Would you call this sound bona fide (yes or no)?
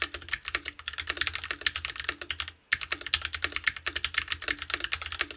yes